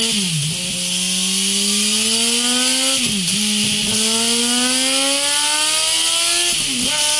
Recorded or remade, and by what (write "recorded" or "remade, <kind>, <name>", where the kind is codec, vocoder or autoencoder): recorded